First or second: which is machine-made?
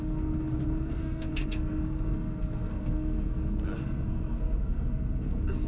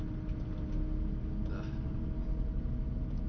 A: first